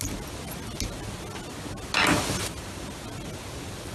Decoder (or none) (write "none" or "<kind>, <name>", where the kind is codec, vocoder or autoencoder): none